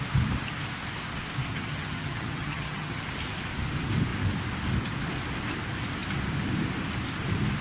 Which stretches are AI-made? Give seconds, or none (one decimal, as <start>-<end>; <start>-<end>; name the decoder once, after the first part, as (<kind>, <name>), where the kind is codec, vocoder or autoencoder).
1.5-3.0 (vocoder, HiFi-GAN)